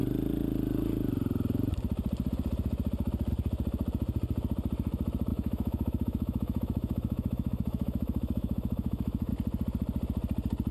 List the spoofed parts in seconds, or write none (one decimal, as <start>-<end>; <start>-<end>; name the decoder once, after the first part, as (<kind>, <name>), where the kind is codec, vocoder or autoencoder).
5.3-9.3 (autoencoder, DAC-VAE)